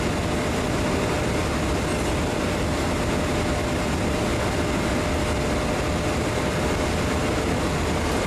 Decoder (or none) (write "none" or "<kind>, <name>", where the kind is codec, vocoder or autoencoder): none